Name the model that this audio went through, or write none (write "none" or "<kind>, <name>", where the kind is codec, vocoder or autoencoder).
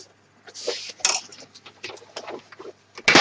none